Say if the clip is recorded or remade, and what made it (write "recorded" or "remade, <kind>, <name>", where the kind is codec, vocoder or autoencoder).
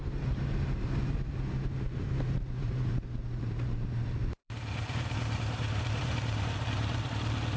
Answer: remade, vocoder, BigVGAN v2